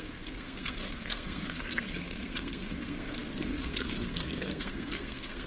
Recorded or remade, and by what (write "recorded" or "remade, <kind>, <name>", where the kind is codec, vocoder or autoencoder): remade, codec, SNAC